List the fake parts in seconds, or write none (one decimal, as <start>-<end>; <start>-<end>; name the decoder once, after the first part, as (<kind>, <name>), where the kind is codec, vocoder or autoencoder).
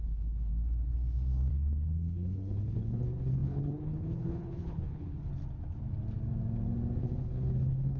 0.0-0.5 (codec, HILCodec); 1.5-5.3; 7.0-8.0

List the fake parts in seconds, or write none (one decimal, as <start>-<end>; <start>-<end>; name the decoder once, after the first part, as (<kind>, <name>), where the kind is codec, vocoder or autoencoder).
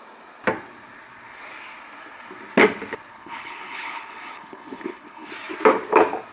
3.1-5.3 (codec, HILCodec)